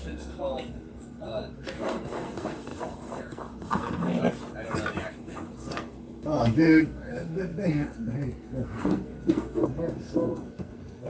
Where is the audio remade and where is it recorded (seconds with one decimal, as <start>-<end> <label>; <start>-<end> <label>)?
0.0-4.2 remade; 4.2-5.1 recorded; 5.1-11.1 remade

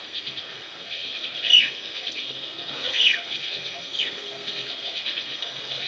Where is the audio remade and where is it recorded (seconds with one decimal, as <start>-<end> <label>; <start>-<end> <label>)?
0.0-5.9 remade

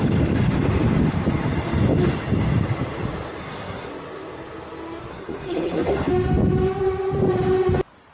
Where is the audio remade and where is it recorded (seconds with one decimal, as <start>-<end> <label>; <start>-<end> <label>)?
0.0-3.4 recorded; 3.4-3.9 remade; 3.9-5.1 recorded; 5.1-6.1 remade; 6.1-8.1 recorded

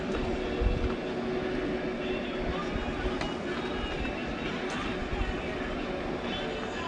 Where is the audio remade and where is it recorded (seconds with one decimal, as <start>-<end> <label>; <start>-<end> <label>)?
0.0-6.9 recorded